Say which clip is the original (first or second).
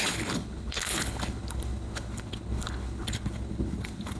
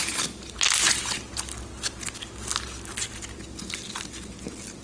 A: second